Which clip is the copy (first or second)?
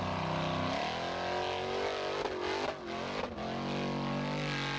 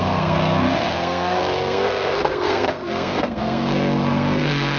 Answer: second